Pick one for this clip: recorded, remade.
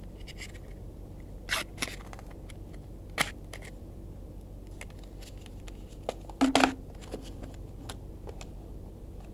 recorded